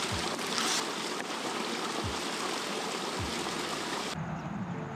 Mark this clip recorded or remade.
recorded